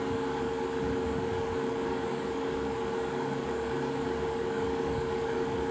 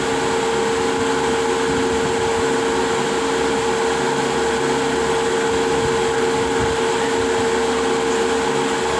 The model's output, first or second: first